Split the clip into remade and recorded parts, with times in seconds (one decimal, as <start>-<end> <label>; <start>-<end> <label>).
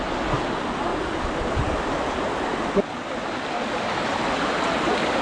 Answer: 0.0-5.2 recorded